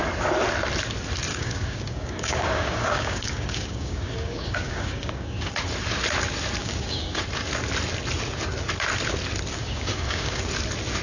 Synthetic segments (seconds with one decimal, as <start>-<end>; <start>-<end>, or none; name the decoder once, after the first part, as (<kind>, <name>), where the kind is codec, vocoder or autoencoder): 1.3-5.5 (codec, DAC); 6.6-7.2; 9.5-10.4